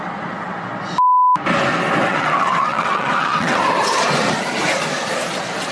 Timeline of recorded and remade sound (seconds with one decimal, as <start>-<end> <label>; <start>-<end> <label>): 0.0-2.1 recorded; 2.1-3.6 remade; 3.6-5.7 recorded